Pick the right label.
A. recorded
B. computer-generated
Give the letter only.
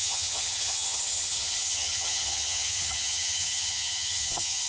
B